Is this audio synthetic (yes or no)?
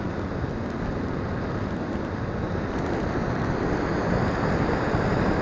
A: no